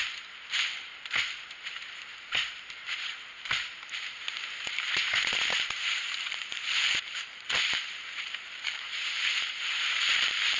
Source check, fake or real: fake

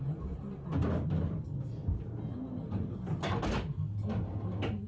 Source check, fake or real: real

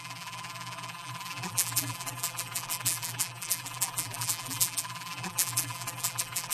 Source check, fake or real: fake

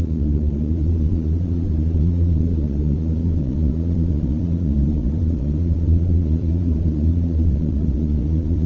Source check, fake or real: fake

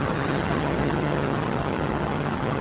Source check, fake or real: fake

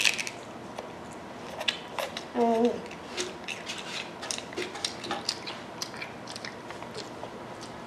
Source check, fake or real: real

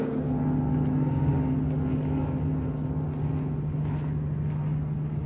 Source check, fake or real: real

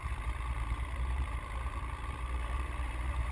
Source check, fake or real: fake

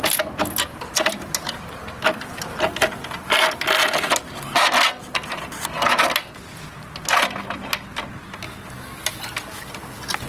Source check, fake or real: real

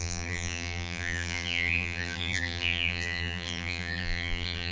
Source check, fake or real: fake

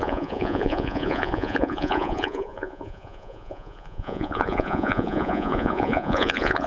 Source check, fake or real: fake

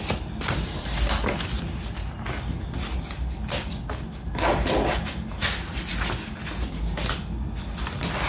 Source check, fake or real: real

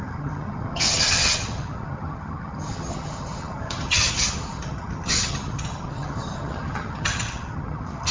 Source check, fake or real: fake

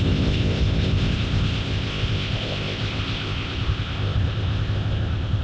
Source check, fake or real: fake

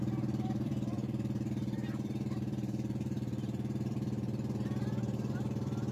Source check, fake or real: fake